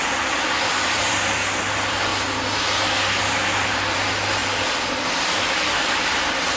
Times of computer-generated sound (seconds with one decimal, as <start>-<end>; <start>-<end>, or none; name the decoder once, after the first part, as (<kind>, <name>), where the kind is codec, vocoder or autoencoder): 0.0-2.1 (vocoder, BigVGAN v2); 3.2-6.6